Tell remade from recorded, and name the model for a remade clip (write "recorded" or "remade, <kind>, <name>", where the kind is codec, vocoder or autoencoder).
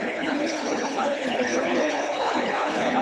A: remade, codec, HILCodec